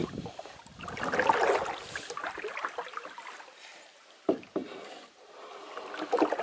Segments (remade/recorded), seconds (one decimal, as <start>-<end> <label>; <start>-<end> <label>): 0.0-0.7 remade; 0.7-4.6 recorded; 4.6-5.5 remade; 5.5-6.4 recorded